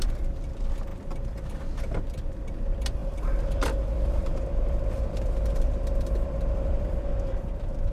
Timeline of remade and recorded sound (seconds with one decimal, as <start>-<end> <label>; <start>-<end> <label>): 0.0-0.9 remade; 0.9-1.9 recorded; 1.9-7.9 remade